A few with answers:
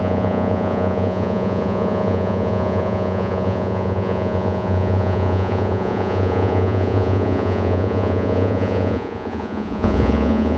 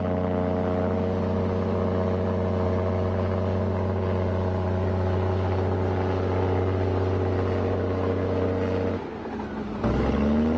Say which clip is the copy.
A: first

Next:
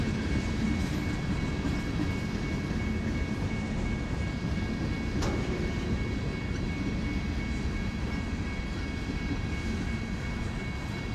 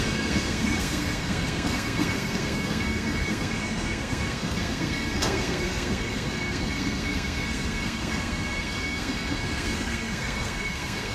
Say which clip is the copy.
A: second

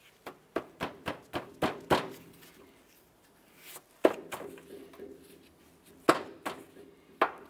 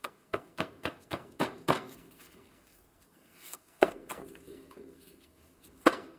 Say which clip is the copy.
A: second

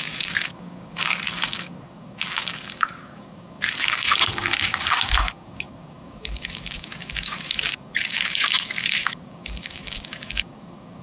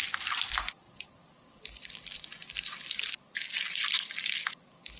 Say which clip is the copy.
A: first